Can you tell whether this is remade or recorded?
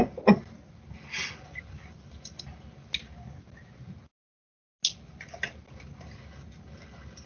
recorded